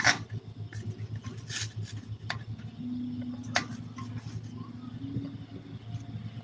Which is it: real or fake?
real